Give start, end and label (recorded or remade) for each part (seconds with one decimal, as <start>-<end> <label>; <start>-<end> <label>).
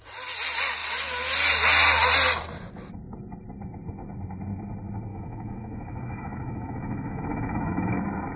0.0-5.1 recorded; 5.1-8.0 remade; 8.0-8.4 recorded